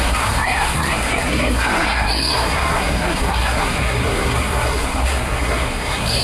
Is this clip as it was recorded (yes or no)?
no